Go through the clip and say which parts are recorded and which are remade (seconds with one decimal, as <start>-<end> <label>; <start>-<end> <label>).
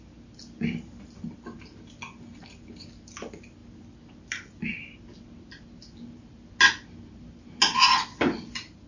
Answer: 0.0-8.9 recorded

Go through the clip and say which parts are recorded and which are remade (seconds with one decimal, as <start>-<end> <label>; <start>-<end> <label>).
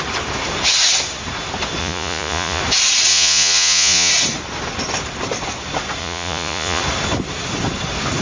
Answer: 0.0-1.8 recorded; 1.8-2.6 remade; 2.6-3.1 recorded; 3.1-4.1 remade; 4.1-6.0 recorded; 6.0-6.8 remade; 6.8-8.2 recorded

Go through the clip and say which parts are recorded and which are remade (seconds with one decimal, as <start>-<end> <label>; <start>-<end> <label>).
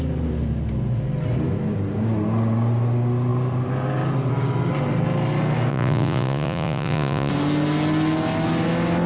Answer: 0.0-5.7 recorded; 5.7-7.3 remade; 7.3-9.1 recorded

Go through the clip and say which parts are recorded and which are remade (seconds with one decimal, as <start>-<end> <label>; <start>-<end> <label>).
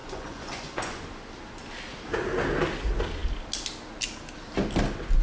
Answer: 0.0-1.0 remade; 1.0-5.2 recorded